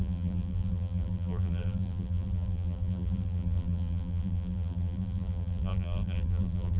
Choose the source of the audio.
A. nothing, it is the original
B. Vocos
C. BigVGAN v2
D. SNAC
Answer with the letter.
C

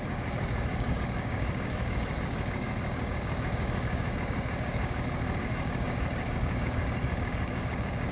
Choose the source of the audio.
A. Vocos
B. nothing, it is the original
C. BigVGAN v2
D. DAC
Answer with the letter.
D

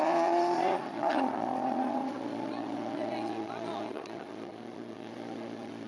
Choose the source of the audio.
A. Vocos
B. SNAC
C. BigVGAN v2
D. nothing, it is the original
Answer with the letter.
A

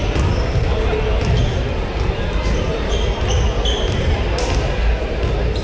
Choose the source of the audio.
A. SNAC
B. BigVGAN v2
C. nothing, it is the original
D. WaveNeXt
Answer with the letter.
C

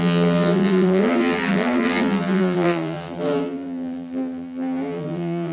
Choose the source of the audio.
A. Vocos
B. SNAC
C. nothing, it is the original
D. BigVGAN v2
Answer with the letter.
D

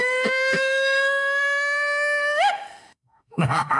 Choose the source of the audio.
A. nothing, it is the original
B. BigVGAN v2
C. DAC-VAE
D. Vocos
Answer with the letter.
C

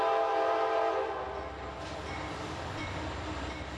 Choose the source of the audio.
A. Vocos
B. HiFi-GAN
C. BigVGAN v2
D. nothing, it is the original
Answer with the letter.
C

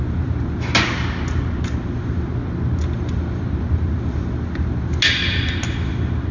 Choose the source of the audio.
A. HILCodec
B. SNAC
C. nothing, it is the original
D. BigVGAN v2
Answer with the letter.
C